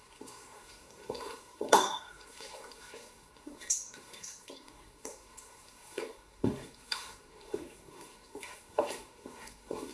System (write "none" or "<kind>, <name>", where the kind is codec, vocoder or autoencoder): codec, SNAC